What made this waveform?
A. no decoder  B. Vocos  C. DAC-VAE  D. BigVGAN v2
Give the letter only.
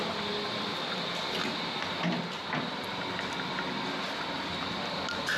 A